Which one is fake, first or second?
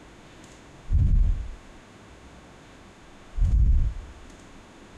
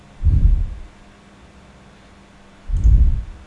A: first